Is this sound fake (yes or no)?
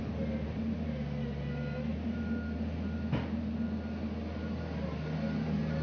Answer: no